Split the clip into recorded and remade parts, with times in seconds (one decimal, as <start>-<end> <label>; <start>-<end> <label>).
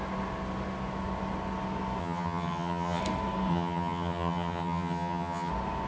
0.0-2.0 recorded; 2.0-3.0 remade; 3.0-3.5 recorded; 3.5-5.5 remade; 5.5-5.9 recorded